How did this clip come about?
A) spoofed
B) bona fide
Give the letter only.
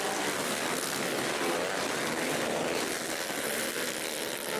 B